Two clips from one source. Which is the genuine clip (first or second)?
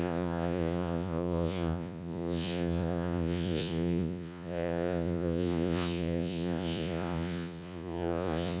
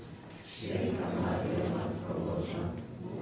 second